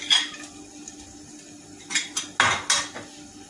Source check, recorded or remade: recorded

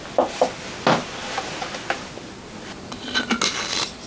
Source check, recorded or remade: recorded